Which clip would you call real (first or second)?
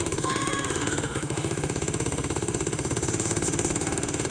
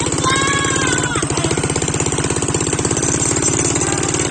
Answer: second